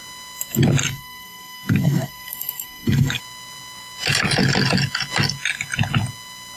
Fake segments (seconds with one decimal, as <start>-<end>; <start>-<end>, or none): 0.8-3.2